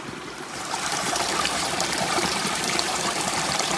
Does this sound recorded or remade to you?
remade